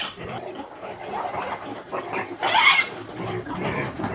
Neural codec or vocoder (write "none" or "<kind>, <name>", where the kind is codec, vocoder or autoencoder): vocoder, BigVGAN v2